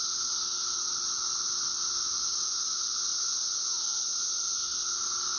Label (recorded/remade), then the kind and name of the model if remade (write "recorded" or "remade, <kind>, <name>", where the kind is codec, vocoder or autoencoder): recorded